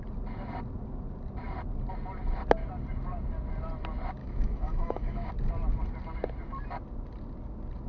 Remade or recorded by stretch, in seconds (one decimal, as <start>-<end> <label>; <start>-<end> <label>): 0.0-4.2 recorded; 4.2-5.3 remade; 5.3-7.9 recorded